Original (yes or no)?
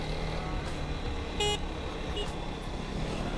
yes